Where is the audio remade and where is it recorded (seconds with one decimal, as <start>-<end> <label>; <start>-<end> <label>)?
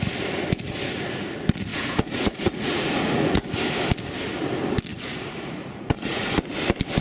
0.0-1.7 recorded; 1.7-3.6 remade; 3.6-4.9 recorded; 4.9-6.3 remade; 6.3-7.0 recorded